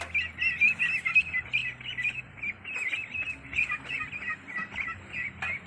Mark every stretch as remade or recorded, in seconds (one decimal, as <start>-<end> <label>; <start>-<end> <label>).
0.0-5.7 recorded